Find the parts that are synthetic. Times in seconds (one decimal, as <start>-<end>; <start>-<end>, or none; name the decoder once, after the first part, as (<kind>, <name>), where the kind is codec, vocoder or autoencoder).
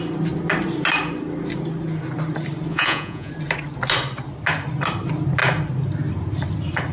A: 2.7-3.3 (vocoder, Vocos)